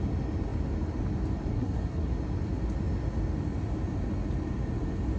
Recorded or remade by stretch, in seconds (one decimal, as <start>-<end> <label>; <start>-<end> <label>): 0.0-1.5 recorded; 1.5-2.1 remade; 2.1-5.2 recorded